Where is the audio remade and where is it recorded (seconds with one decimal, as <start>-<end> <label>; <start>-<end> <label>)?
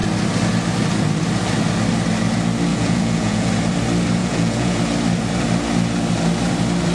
0.0-2.7 recorded; 2.7-3.5 remade; 3.5-4.2 recorded; 4.2-4.8 remade; 4.8-6.9 recorded